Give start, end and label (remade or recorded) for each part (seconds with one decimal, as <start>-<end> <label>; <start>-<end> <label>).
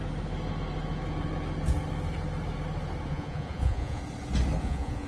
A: 0.0-3.1 recorded; 3.1-4.0 remade; 4.0-4.6 recorded; 4.6-5.1 remade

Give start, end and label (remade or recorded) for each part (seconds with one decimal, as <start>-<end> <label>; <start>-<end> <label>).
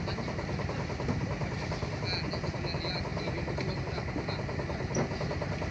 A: 0.0-5.7 recorded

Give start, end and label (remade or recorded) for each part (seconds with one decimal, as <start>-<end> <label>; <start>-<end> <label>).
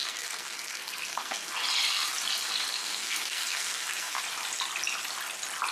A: 0.0-1.5 remade; 1.5-2.8 recorded; 2.8-4.2 remade; 4.2-5.7 recorded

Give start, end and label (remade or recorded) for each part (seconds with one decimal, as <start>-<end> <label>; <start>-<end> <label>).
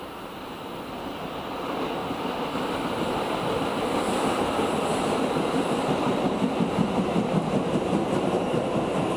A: 0.0-2.0 remade; 2.0-5.2 recorded; 5.2-9.2 remade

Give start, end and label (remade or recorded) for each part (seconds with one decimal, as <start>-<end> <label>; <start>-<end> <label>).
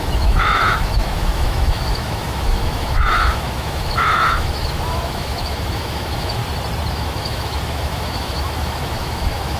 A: 0.0-6.4 remade; 6.4-6.9 recorded; 6.9-9.6 remade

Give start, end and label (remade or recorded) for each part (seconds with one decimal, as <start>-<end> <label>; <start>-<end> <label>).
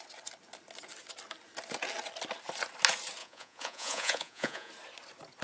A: 0.0-3.2 recorded; 3.2-4.7 remade; 4.7-5.4 recorded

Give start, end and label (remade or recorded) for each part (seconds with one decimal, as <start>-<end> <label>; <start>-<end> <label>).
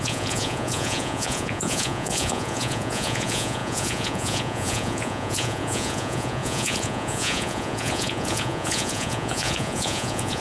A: 0.0-10.4 remade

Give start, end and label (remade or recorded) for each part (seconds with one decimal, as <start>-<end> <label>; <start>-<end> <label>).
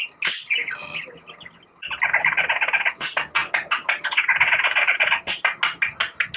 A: 0.0-6.4 recorded